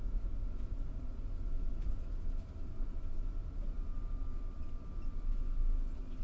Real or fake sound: real